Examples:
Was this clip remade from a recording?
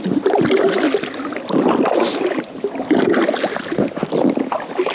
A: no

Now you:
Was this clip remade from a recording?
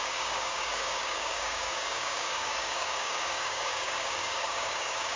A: yes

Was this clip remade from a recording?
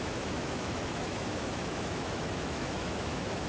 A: yes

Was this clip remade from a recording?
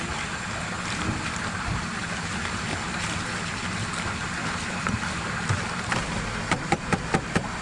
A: no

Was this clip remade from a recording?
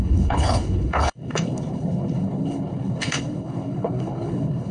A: yes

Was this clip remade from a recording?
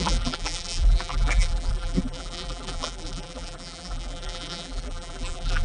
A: yes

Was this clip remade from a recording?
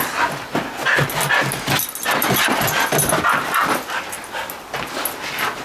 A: no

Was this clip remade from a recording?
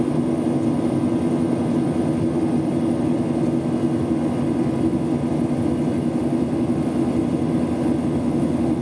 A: no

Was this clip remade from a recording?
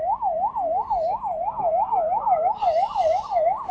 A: no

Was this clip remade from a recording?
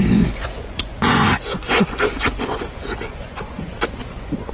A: yes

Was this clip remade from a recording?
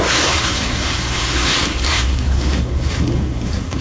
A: yes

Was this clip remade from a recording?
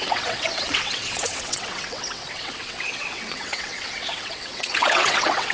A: yes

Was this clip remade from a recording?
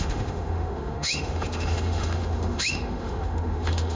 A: yes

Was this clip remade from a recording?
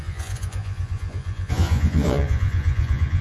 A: yes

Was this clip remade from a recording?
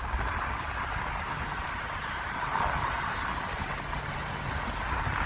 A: no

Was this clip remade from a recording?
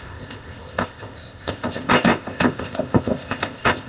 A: yes